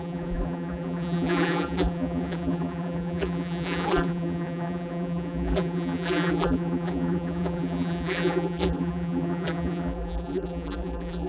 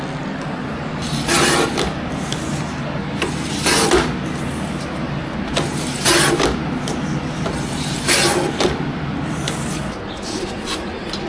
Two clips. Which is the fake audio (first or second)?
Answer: first